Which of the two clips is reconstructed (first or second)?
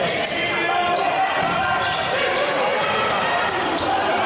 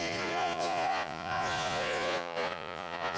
second